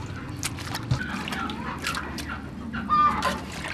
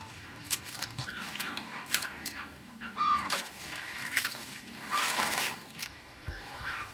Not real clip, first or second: second